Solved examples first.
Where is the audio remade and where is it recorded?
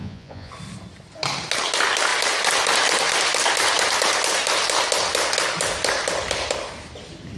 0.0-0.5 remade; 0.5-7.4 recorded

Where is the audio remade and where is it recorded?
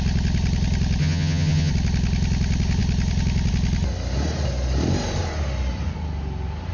0.0-1.0 recorded; 1.0-1.7 remade; 1.7-6.7 recorded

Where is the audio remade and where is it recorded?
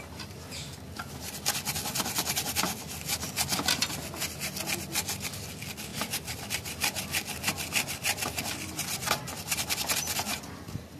0.0-5.9 remade; 5.9-6.5 recorded; 6.5-11.0 remade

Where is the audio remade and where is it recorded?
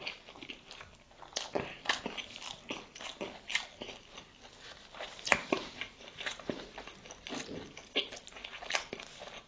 0.0-5.1 recorded; 5.1-6.7 remade; 6.7-9.5 recorded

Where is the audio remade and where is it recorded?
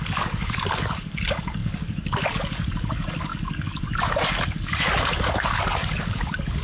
0.0-6.6 remade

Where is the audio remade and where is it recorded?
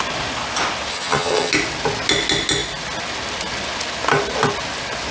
0.0-0.9 recorded; 0.9-1.5 remade; 1.5-5.1 recorded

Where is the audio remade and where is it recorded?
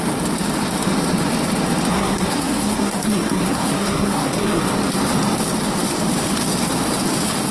0.0-1.9 recorded; 1.9-4.6 remade; 4.6-7.5 recorded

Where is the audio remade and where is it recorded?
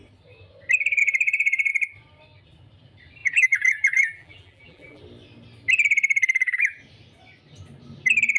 0.0-1.0 recorded; 1.0-1.7 remade; 1.7-3.2 recorded; 3.2-5.0 remade; 5.0-8.4 recorded